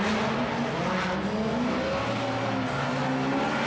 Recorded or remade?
recorded